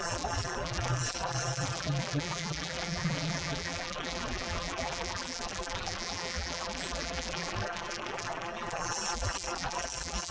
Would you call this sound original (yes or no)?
no